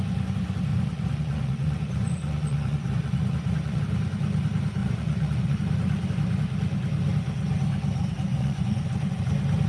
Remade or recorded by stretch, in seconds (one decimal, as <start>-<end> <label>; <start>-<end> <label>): 0.0-0.7 recorded; 0.7-3.8 remade; 3.8-4.8 recorded; 4.8-5.6 remade; 5.6-8.3 recorded; 8.3-8.8 remade; 8.8-9.7 recorded